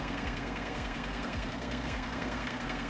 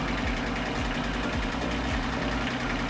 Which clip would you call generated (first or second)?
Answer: first